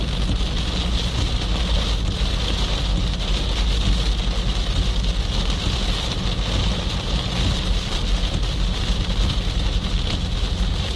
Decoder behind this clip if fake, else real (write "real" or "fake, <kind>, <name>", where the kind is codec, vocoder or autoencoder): real